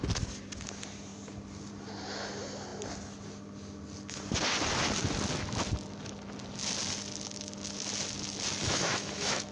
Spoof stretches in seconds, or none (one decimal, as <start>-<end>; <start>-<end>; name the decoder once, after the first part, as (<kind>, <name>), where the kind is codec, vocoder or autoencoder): 8.6-9.5 (autoencoder, DAC-VAE)